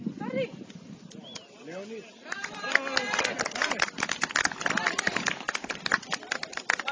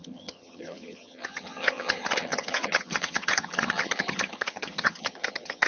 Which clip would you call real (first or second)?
first